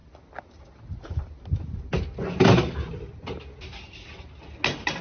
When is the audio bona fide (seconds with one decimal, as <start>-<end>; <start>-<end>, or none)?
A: 0.0-5.0